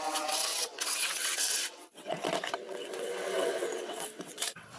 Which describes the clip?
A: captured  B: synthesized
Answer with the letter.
B